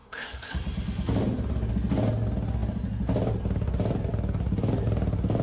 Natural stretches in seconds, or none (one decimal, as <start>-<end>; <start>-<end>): 0.5-5.4